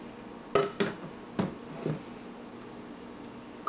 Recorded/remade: recorded